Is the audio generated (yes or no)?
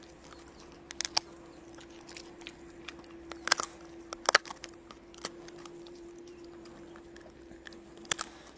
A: no